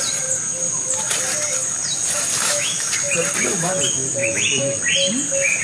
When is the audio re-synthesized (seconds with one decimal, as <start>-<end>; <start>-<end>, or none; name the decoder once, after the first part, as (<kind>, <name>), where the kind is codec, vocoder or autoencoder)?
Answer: 2.3-2.9 (autoencoder, DAC-VAE); 4.2-4.8